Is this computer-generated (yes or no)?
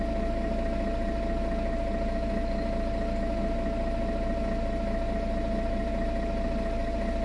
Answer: no